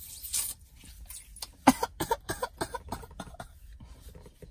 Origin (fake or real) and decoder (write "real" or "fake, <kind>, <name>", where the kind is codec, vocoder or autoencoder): real